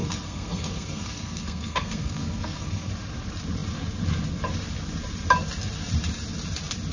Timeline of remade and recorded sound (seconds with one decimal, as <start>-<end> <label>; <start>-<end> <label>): 0.0-2.9 remade; 2.9-6.9 recorded